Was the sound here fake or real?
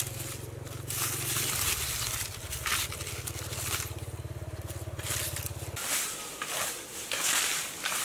real